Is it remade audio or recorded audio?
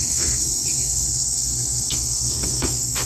remade